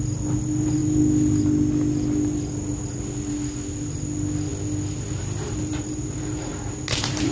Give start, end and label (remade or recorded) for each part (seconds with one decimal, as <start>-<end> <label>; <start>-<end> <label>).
0.0-7.3 recorded